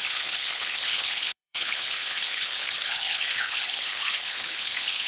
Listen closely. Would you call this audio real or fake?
fake